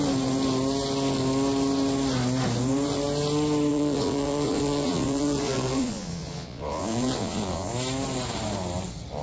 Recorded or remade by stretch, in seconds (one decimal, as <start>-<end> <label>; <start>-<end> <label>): 0.0-3.7 recorded; 3.7-7.7 remade; 7.7-9.2 recorded